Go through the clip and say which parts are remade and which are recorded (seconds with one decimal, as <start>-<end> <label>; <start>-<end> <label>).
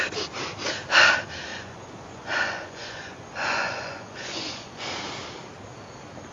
0.0-1.5 recorded; 1.5-4.9 remade; 4.9-6.3 recorded